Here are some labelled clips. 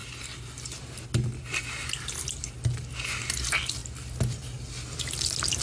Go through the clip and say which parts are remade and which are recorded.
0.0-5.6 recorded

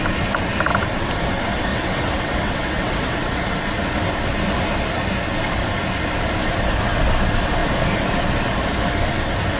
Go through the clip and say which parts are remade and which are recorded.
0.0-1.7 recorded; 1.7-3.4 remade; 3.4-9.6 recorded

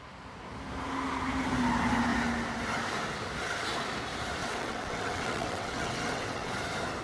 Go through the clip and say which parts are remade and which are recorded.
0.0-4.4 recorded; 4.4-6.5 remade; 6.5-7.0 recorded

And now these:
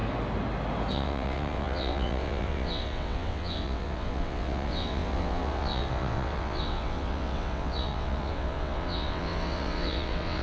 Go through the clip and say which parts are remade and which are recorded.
0.0-0.9 recorded; 0.9-10.4 remade

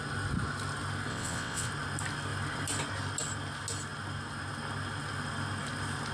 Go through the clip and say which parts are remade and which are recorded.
0.0-1.1 recorded; 1.1-1.7 remade; 1.7-6.1 recorded